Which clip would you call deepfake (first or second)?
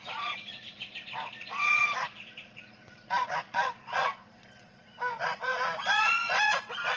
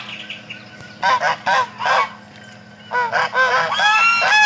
first